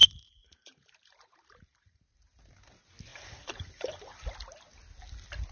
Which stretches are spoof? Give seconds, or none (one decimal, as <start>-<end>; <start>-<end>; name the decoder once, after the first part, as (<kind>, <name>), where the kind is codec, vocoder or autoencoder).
0.0-2.0 (vocoder, BigVGAN v2); 3.1-4.3